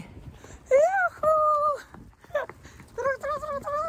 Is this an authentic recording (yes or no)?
yes